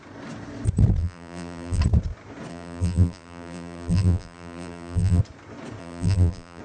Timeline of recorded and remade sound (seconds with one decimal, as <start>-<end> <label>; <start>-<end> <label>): 0.0-1.0 recorded; 1.0-1.8 remade; 1.8-2.5 recorded; 2.5-5.2 remade; 5.2-5.8 recorded; 5.8-6.6 remade